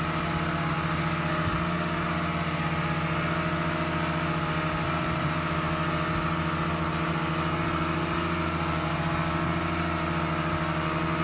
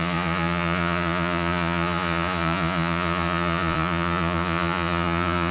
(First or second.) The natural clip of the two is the first